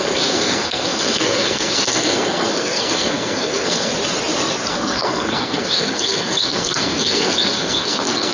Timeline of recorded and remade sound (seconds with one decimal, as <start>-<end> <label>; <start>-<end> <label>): 0.0-3.9 remade; 3.9-4.7 recorded; 4.7-8.3 remade